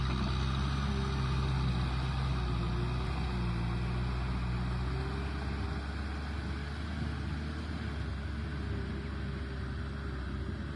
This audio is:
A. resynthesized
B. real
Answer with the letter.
B